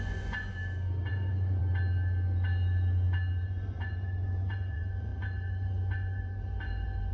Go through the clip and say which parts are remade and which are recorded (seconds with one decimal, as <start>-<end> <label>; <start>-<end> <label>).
0.0-0.5 remade; 0.5-1.1 recorded; 1.1-1.6 remade; 1.6-3.4 recorded; 3.4-7.1 remade